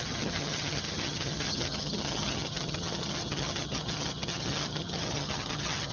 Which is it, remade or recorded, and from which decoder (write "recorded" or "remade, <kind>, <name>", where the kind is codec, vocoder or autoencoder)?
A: remade, vocoder, HiFi-GAN